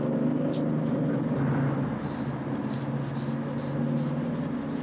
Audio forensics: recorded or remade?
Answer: recorded